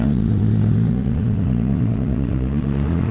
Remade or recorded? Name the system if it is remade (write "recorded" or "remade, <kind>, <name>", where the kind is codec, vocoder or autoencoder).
remade, vocoder, Vocos